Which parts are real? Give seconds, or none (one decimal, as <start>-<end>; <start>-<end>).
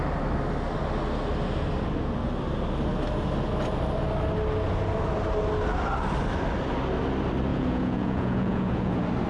0.0-7.5; 8.9-9.3